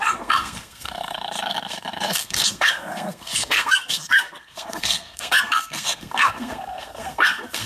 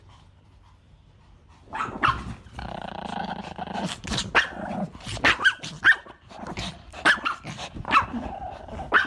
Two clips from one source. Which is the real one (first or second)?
second